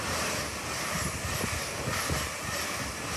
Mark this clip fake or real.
real